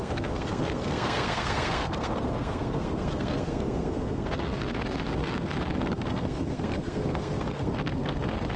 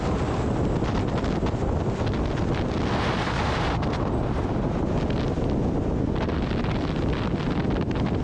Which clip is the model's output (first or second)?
first